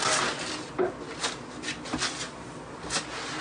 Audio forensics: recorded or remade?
recorded